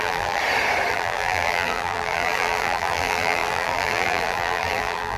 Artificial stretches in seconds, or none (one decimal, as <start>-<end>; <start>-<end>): 0.0-0.4; 0.9-5.2